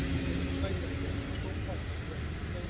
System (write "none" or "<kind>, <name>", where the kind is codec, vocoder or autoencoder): none